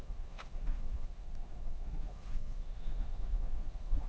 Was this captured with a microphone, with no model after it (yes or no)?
no